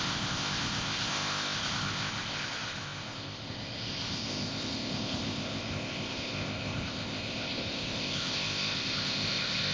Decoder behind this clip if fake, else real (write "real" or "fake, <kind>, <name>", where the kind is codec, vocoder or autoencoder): fake, codec, ZipCodec